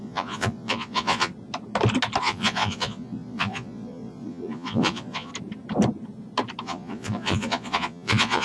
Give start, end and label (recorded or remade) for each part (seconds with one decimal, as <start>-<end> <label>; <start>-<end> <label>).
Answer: 0.0-1.3 remade; 1.3-2.2 recorded; 2.2-5.3 remade; 5.3-6.6 recorded; 6.6-8.4 remade